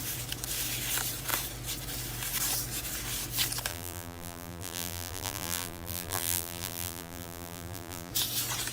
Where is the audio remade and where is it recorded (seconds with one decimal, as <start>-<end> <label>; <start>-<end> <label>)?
0.0-3.7 recorded; 3.7-8.1 remade; 8.1-8.7 recorded